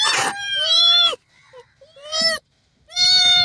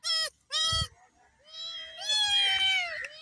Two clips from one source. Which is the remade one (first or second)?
first